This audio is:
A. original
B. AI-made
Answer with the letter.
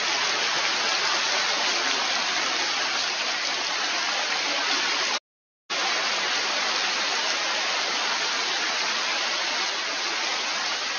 A